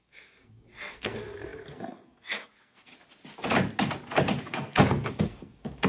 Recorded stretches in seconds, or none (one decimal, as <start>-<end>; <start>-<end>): 2.9-4.4